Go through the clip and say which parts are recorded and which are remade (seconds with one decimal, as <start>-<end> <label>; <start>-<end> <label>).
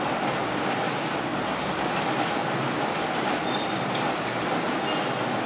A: 0.0-5.5 recorded